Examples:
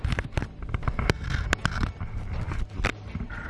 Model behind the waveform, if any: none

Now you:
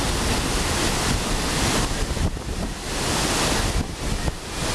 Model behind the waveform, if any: none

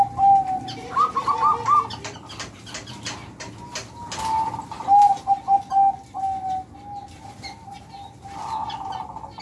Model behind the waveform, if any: none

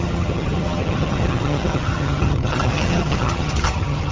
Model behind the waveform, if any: vocoder, HiFi-GAN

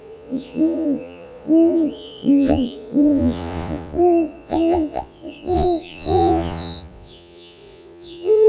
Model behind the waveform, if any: vocoder, Vocos